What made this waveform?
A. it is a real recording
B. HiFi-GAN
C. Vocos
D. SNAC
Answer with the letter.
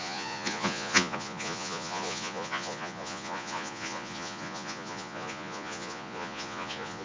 C